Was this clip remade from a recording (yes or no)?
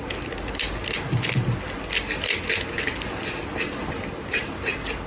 no